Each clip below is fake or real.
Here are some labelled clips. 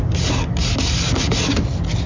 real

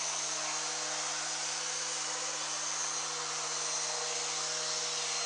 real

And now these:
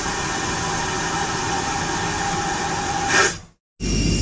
real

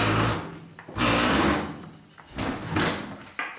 real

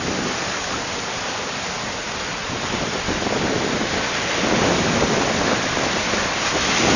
real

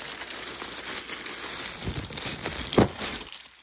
real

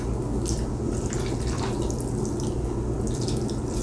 real